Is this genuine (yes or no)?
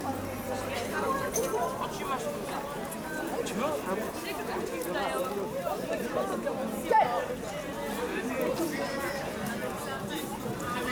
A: yes